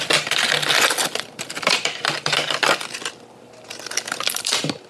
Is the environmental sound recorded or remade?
recorded